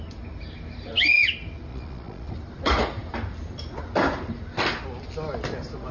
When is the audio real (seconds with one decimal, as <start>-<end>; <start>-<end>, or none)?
0.0-1.7; 2.3-5.9